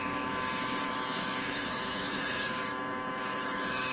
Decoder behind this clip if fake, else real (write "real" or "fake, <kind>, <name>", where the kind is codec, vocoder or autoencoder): fake, autoencoder, DAC-VAE